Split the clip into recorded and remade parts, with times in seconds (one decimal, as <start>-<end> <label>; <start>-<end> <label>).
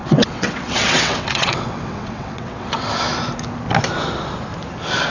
0.0-2.9 remade; 2.9-5.1 recorded